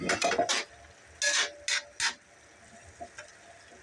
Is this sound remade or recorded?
recorded